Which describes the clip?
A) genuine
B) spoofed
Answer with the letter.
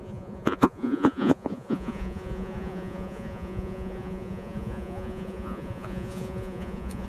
B